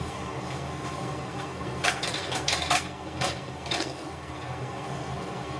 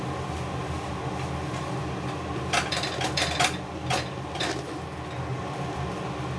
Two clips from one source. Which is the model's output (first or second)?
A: first